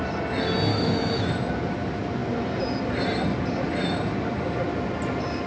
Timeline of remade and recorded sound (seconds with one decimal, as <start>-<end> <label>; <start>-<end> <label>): 0.0-0.7 recorded; 0.7-1.3 remade; 1.3-5.5 recorded